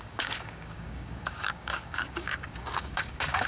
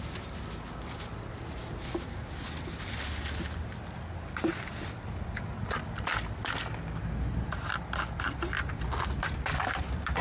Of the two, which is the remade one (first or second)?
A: first